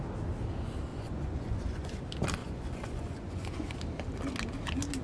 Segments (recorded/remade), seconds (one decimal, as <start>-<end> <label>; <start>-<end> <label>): 0.0-0.9 recorded; 0.9-2.0 remade; 2.0-2.4 recorded; 2.4-3.8 remade; 3.8-5.0 recorded